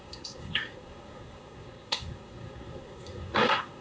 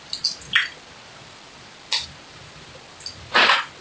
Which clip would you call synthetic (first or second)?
first